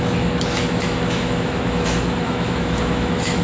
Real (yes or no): no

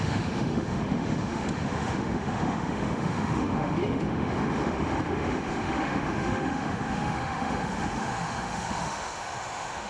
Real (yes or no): no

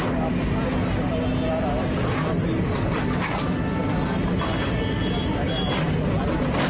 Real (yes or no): yes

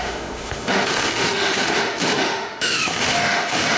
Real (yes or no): no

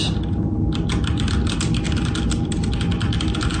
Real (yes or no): yes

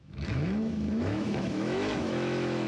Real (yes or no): no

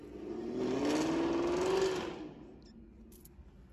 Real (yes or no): yes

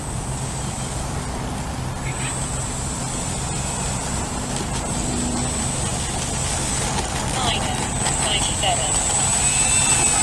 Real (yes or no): yes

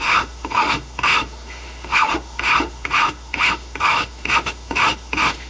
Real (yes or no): no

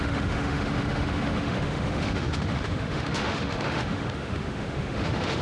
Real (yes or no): no